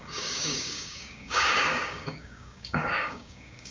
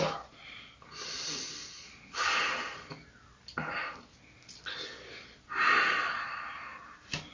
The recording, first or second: second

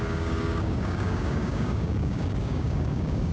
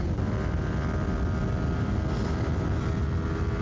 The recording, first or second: second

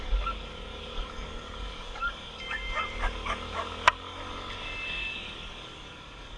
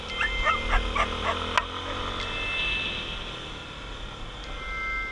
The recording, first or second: second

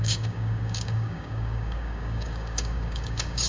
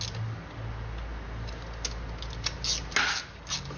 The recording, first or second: second